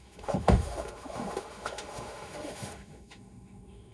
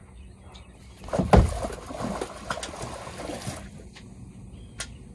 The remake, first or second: first